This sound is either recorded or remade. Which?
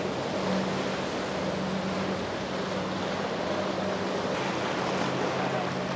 recorded